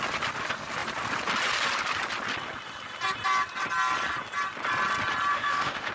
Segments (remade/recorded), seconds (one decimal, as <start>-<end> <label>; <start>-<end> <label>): 0.0-5.3 recorded; 5.3-5.9 remade